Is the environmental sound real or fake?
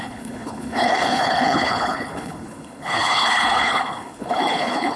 fake